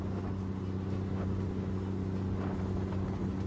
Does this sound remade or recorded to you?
recorded